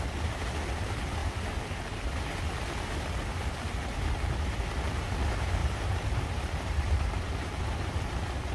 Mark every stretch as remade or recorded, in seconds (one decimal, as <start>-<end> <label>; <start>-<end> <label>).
0.0-5.6 recorded; 5.6-8.5 remade